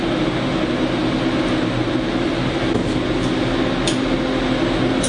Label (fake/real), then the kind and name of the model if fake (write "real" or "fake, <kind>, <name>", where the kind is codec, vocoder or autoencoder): real